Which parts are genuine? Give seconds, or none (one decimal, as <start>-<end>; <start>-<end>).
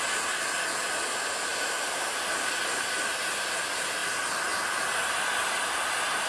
0.0-1.5; 2.1-6.3